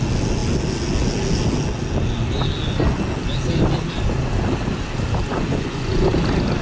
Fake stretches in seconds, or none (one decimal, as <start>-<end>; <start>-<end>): 5.3-6.1